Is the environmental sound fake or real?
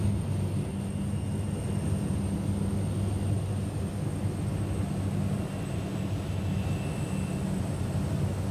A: real